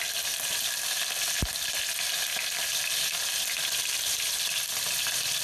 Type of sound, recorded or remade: recorded